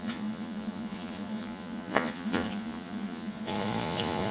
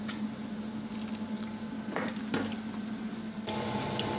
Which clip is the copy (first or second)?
first